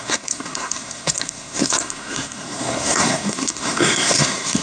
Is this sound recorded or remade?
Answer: remade